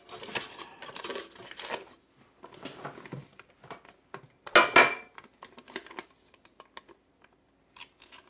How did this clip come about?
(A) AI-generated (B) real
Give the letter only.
B